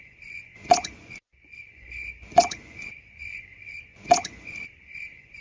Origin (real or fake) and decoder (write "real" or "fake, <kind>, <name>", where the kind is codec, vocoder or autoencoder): fake, vocoder, Vocos